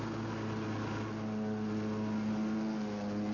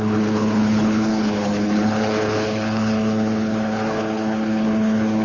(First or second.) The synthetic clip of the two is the second